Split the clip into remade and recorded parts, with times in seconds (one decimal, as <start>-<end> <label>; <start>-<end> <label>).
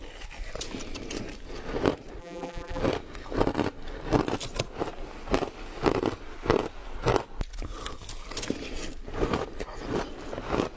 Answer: 0.0-2.2 recorded; 2.2-2.8 remade; 2.8-10.8 recorded